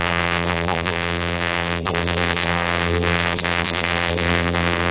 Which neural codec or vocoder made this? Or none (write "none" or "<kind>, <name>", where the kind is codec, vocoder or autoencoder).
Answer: vocoder, BigVGAN v2